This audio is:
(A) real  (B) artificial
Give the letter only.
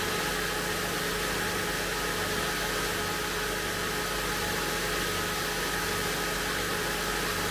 A